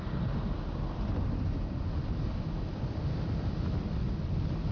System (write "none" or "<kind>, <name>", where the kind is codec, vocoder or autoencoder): none